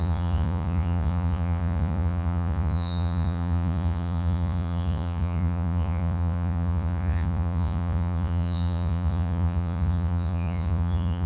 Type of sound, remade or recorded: remade